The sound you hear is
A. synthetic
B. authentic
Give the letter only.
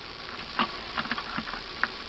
B